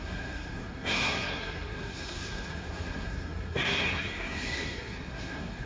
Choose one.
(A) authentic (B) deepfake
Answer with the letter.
B